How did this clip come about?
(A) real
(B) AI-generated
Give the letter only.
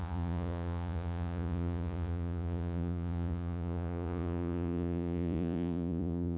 B